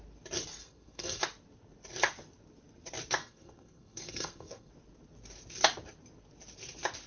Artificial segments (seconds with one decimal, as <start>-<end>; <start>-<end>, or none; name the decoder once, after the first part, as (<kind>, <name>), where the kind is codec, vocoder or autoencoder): 0.6-1.2 (codec, SNAC); 3.2-4.7